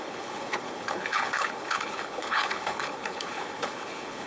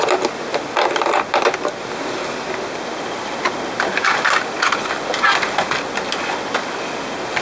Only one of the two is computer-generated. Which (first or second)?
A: first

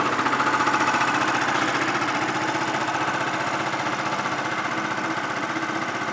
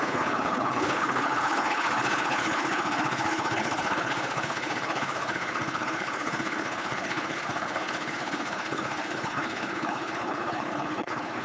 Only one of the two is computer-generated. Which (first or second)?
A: second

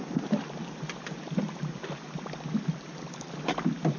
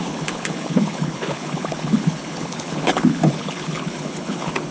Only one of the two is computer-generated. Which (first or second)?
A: second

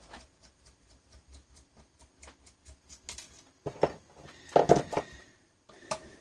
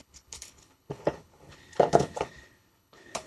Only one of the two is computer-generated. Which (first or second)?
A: second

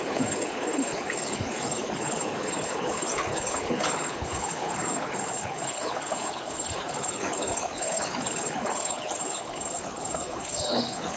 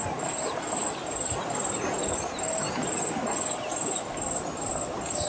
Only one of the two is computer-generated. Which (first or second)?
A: first